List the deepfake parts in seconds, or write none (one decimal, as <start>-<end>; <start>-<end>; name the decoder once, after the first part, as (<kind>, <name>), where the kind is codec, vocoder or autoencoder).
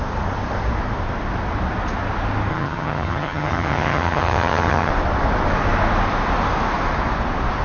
2.5-4.9 (vocoder, HiFi-GAN)